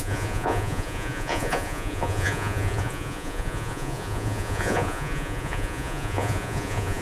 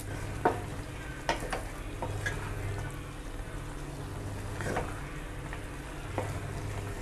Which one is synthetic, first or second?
first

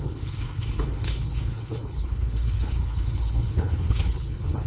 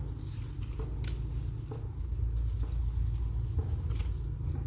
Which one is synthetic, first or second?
first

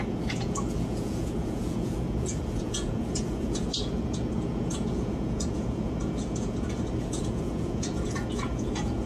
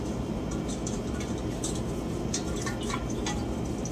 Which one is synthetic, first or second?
first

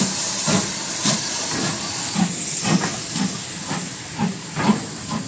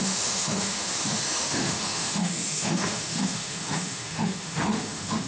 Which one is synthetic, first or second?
second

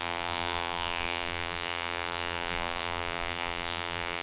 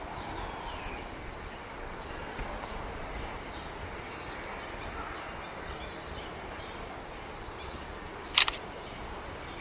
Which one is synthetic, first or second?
first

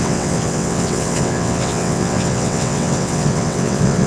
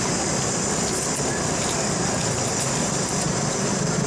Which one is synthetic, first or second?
first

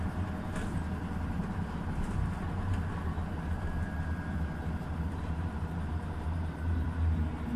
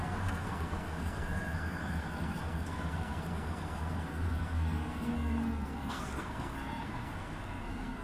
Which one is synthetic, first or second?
second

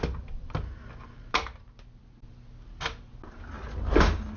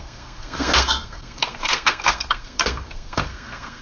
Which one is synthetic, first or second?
second